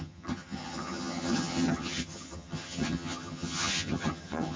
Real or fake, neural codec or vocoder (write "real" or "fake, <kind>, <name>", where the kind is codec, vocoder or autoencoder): fake, vocoder, HiFi-GAN